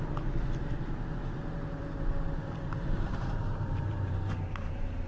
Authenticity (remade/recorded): remade